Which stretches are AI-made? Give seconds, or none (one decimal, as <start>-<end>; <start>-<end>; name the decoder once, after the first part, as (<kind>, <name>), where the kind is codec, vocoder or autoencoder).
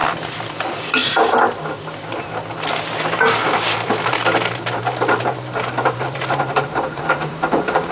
0.6-1.0 (vocoder, BigVGAN v2); 5.7-7.9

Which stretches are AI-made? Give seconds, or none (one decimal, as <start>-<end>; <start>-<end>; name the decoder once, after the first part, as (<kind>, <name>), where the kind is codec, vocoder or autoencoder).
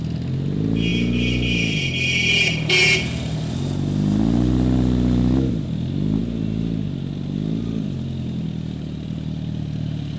none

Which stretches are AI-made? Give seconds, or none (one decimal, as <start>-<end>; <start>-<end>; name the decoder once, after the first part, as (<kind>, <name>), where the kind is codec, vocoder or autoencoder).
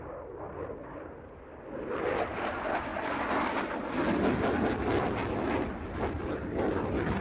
none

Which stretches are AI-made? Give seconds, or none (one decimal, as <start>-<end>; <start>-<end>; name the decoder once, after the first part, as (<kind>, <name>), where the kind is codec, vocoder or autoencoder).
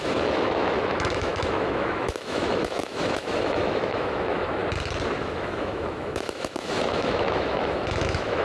0.0-4.6 (autoencoder, DAC-VAE); 5.2-8.4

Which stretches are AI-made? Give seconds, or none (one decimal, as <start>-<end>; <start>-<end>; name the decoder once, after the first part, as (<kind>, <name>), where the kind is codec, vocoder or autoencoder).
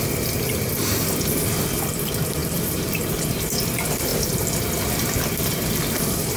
2.4-3.2 (vocoder, BigVGAN v2)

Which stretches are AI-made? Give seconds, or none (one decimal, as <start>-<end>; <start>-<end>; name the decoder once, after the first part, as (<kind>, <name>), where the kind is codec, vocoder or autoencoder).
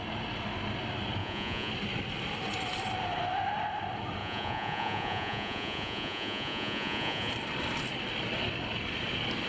1.2-1.7 (vocoder, Vocos); 4.2-7.3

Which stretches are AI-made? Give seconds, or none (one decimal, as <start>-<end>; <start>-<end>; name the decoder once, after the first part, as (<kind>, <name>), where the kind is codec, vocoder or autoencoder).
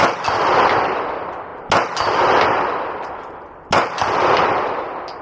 0.0-1.5 (vocoder, BigVGAN v2); 4.6-5.2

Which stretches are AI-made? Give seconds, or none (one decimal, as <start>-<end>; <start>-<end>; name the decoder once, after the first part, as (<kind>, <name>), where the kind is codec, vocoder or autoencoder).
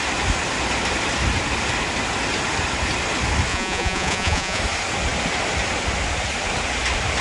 3.5-4.6 (vocoder, Vocos)